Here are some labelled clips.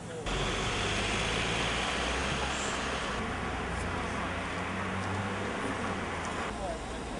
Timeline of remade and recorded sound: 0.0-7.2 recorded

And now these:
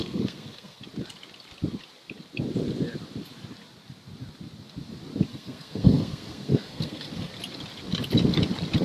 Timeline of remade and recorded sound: 0.0-0.8 remade; 0.8-5.3 recorded; 5.3-7.3 remade; 7.3-8.8 recorded

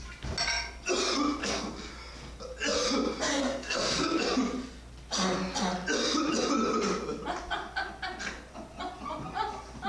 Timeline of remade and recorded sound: 0.0-1.4 recorded; 1.4-1.9 remade; 1.9-3.4 recorded; 3.4-4.2 remade; 4.2-9.9 recorded

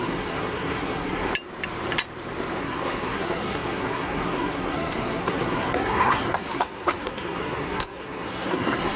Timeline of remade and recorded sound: 0.0-1.3 remade; 1.3-2.6 recorded; 2.6-9.0 remade

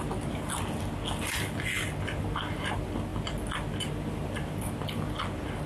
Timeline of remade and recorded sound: 0.0-5.7 recorded

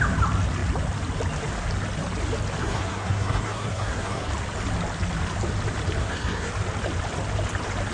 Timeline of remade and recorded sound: 0.0-2.6 recorded; 2.6-4.3 remade; 4.3-6.0 recorded; 6.0-6.5 remade; 6.5-7.9 recorded

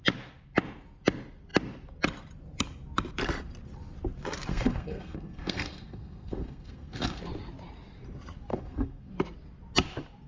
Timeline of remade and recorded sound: 0.0-4.5 recorded; 4.5-7.2 remade; 7.2-8.5 recorded; 8.5-9.1 remade; 9.1-10.3 recorded

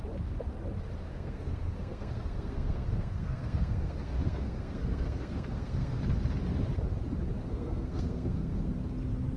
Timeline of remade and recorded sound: 0.0-1.1 recorded; 1.1-6.0 remade; 6.0-7.4 recorded; 7.4-8.7 remade; 8.7-9.4 recorded